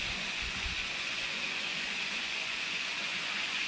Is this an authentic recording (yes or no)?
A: no